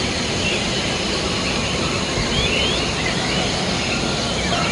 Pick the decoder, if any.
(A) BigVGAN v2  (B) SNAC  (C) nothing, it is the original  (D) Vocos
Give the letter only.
A